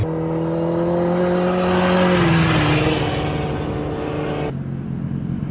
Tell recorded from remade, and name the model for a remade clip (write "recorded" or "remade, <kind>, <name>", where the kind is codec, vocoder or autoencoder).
recorded